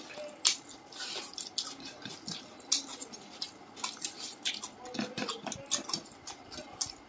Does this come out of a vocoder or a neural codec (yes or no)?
no